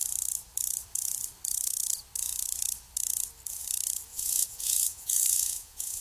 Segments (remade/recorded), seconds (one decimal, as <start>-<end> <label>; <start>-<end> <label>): 0.0-4.1 recorded; 4.1-6.0 remade